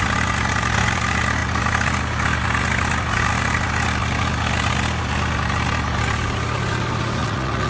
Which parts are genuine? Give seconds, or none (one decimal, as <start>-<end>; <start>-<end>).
0.0-7.2